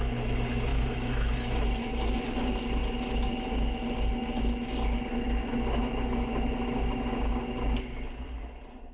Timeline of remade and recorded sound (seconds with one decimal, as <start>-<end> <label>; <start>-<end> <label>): 0.0-0.7 recorded; 0.7-2.4 remade; 2.4-8.9 recorded